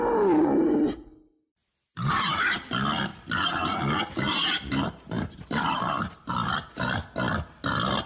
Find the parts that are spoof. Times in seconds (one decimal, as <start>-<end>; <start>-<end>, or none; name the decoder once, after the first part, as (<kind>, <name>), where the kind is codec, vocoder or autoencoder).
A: 1.6-2.3 (vocoder, BigVGAN v2); 4.4-6.3